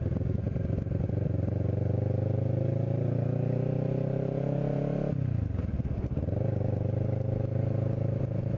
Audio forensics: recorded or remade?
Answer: recorded